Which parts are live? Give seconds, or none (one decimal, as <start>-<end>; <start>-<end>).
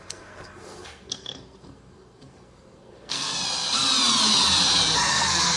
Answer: 3.3-5.1